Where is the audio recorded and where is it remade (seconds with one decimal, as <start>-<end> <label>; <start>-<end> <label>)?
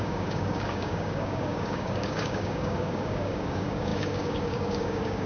0.0-5.3 remade